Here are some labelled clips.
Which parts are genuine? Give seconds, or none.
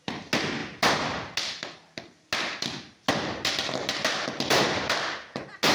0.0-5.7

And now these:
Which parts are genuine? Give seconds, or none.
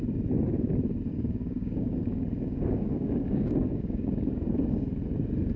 0.0-1.1; 4.5-5.6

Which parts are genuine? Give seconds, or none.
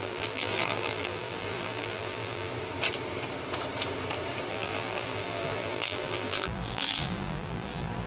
2.5-4.5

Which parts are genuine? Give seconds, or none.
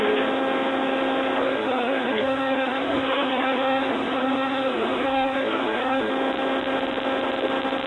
0.0-1.4; 6.1-7.9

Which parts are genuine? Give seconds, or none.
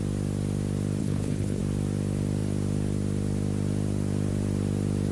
0.0-1.0; 1.6-5.1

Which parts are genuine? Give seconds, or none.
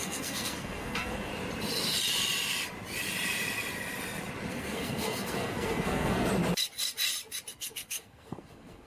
1.3-4.5; 6.3-7.5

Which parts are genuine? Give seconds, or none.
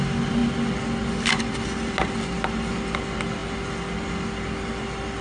0.0-5.2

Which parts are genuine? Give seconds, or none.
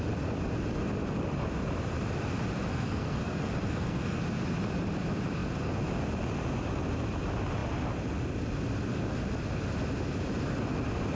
0.0-2.7; 4.2-11.1